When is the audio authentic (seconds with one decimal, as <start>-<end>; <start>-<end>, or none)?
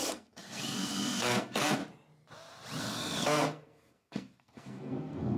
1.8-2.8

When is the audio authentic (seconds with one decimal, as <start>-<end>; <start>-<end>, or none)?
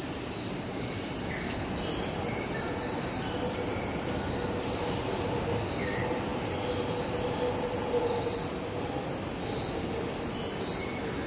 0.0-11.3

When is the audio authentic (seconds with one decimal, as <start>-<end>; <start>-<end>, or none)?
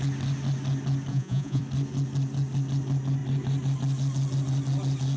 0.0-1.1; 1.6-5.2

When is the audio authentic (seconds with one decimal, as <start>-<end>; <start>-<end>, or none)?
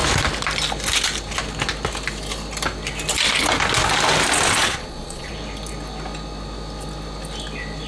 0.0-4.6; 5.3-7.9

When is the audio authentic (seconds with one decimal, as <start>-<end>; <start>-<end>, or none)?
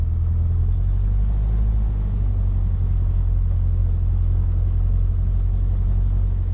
0.0-6.5